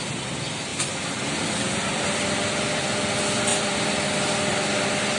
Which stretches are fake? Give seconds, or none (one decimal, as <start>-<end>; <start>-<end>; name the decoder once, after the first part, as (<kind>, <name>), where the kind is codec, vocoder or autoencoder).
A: 3.5-4.1 (vocoder, BigVGAN v2)